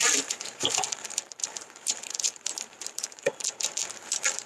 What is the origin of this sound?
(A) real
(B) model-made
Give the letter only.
B